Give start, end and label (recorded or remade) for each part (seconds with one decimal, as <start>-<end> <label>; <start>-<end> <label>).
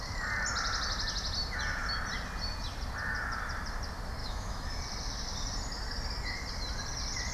0.0-4.2 recorded; 4.2-4.8 remade; 4.8-7.3 recorded